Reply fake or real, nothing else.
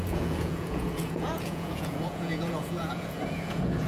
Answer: fake